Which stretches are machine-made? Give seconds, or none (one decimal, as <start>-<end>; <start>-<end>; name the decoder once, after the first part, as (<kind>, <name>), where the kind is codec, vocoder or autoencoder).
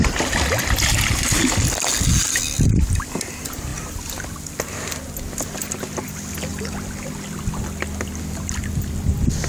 none